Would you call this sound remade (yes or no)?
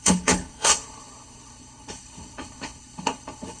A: yes